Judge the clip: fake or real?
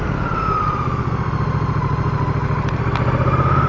real